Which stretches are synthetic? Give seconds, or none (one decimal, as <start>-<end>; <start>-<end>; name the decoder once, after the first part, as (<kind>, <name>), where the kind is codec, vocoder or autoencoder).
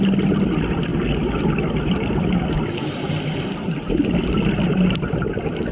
none